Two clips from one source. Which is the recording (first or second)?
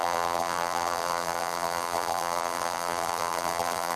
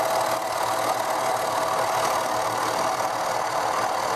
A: second